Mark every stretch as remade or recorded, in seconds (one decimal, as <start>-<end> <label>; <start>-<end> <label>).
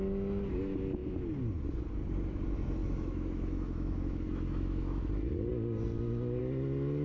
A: 0.0-2.8 recorded; 2.8-5.1 remade; 5.1-7.0 recorded